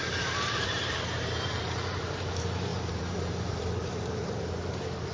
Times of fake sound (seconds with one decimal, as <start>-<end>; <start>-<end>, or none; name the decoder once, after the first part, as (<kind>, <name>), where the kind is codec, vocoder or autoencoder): 0.5-5.1 (vocoder, BigVGAN v2)